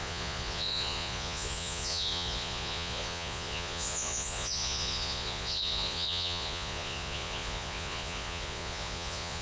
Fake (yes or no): yes